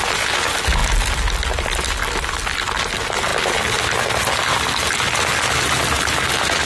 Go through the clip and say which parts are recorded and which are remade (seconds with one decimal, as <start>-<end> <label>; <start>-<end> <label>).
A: 0.0-6.6 recorded